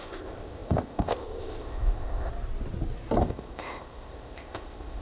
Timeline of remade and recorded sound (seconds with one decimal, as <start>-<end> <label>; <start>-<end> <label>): 0.0-2.3 remade; 2.3-3.2 recorded; 3.2-5.0 remade